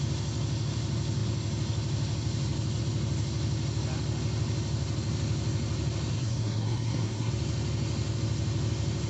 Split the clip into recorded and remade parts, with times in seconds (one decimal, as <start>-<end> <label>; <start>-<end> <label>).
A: 0.0-6.1 recorded; 6.1-7.3 remade; 7.3-9.1 recorded